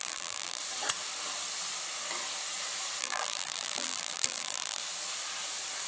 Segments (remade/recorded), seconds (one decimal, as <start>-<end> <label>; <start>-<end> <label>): 0.0-0.6 remade; 0.6-3.0 recorded; 3.0-4.8 remade; 4.8-5.9 recorded